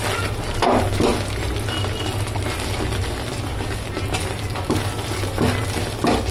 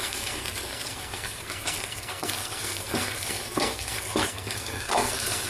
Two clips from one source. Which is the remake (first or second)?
second